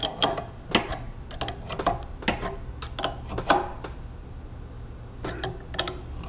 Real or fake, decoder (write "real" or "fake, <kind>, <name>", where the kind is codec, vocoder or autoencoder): real